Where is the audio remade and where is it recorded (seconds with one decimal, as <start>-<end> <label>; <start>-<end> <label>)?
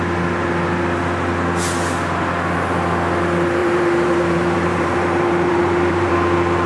0.0-3.6 recorded; 3.6-6.1 remade; 6.1-6.7 recorded